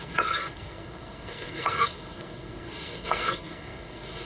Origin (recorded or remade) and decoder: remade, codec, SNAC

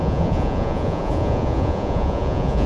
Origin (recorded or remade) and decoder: remade, vocoder, Vocos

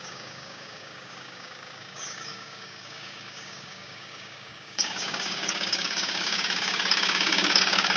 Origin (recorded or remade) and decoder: remade, codec, DAC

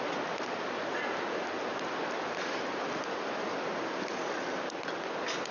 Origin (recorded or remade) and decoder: recorded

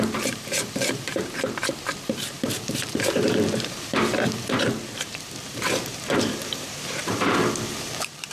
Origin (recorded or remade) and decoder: remade, vocoder, BigVGAN v2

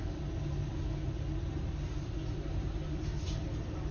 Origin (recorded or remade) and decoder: recorded